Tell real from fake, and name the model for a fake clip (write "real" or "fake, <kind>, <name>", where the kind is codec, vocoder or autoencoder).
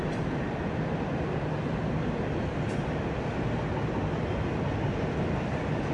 real